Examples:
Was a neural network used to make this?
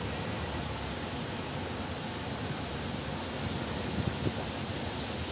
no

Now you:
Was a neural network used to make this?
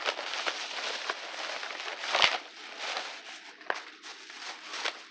no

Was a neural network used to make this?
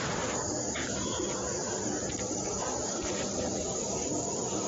no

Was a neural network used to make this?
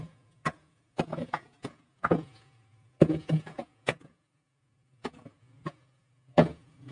yes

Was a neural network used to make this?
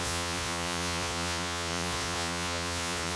yes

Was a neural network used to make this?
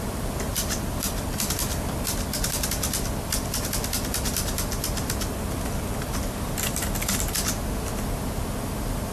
no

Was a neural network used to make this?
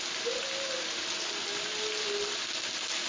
no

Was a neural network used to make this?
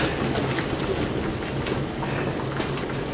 no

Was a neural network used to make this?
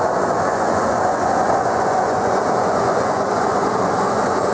yes